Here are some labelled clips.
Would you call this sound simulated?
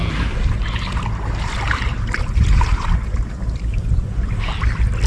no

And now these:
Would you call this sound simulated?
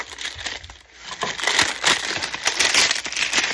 no